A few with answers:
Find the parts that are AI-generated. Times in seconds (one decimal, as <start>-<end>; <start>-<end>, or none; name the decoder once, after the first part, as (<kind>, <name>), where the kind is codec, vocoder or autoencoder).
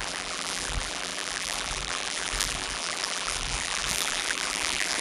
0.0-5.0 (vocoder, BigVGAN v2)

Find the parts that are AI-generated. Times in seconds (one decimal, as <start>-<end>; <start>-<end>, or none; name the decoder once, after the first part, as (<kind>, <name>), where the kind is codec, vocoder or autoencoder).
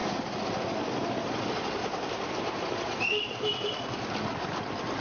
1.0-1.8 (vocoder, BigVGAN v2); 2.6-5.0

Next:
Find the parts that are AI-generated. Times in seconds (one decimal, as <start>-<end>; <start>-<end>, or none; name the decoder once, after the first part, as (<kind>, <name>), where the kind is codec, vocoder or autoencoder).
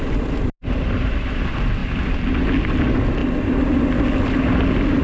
none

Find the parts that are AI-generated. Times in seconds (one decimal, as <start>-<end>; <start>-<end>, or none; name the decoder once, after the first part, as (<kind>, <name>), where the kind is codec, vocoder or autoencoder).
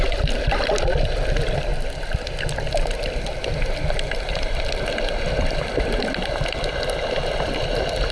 0.0-1.7 (vocoder, BigVGAN v2); 3.2-8.1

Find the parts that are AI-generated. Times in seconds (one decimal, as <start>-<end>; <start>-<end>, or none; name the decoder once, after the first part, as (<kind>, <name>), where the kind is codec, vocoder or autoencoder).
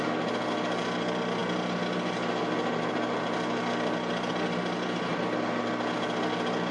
5.1-6.0 (vocoder, BigVGAN v2)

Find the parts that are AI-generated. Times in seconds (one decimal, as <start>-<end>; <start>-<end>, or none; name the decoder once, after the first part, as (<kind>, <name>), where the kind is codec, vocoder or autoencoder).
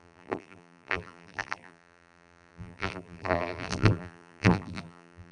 0.0-5.3 (vocoder, BigVGAN v2)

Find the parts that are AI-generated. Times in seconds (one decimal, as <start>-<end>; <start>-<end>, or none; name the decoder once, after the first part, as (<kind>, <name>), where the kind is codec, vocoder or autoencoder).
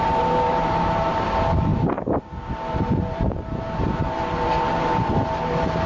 0.0-5.9 (vocoder, BigVGAN v2)